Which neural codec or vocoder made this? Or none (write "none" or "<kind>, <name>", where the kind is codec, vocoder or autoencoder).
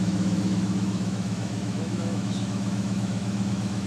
autoencoder, DAC-VAE